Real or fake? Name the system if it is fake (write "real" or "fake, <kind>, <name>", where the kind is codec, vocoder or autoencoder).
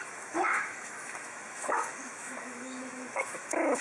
fake, autoencoder, DAC-VAE